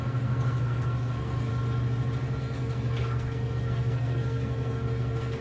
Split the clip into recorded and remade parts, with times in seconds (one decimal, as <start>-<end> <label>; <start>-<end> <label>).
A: 0.0-1.5 remade; 1.5-2.4 recorded; 2.4-5.4 remade